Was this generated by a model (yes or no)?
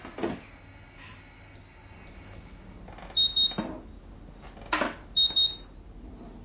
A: no